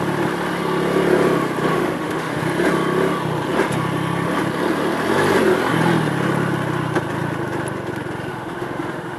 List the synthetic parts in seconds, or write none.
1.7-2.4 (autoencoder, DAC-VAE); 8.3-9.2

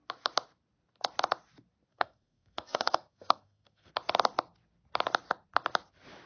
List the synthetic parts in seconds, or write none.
1.9-3.9 (codec, SNAC)

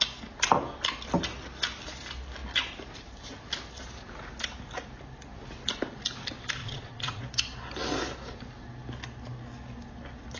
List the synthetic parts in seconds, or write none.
6.6-7.2 (vocoder, Vocos)